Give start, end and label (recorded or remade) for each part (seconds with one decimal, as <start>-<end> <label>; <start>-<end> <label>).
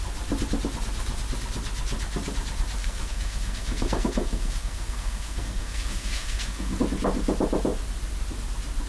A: 0.0-2.8 recorded; 2.8-6.8 remade; 6.8-8.9 recorded